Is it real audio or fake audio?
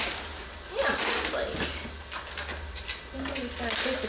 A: real